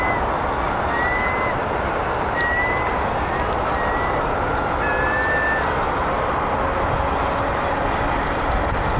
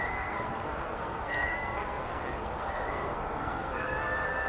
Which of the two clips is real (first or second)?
first